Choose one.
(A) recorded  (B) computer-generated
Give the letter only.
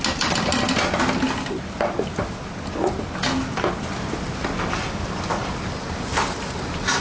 A